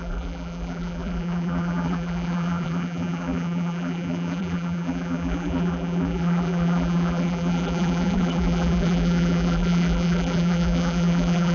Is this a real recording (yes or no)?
no